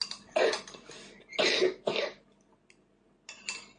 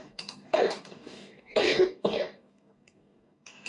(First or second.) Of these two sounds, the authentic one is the first